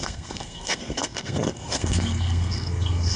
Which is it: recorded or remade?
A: remade